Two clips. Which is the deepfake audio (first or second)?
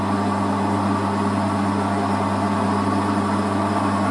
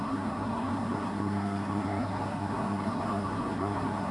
second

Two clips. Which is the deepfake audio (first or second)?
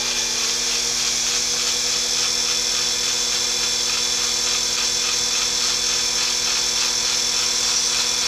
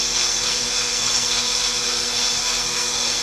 second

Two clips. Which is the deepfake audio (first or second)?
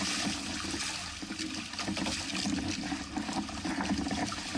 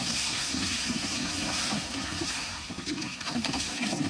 second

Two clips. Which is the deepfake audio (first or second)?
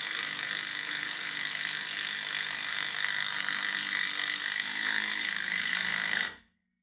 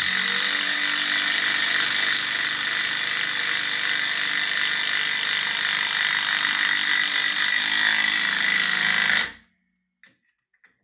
first